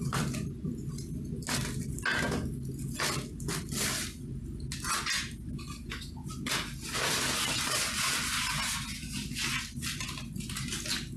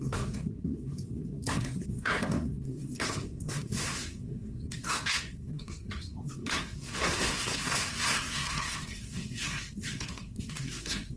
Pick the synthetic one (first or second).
second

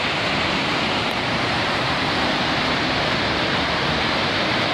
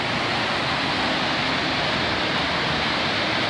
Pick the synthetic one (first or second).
first